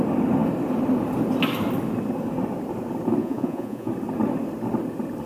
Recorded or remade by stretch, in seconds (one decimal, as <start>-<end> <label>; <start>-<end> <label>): 0.0-3.2 recorded; 3.2-3.9 remade; 3.9-5.3 recorded